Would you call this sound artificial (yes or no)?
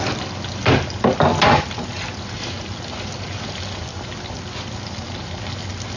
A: no